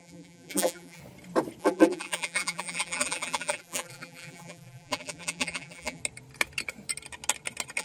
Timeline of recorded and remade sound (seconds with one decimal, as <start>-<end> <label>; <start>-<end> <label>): 0.0-1.0 remade; 1.0-1.6 recorded; 1.6-6.0 remade; 6.0-7.8 recorded